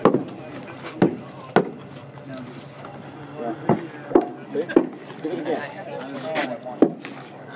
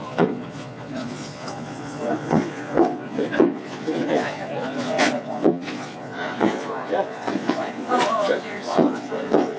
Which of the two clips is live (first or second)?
first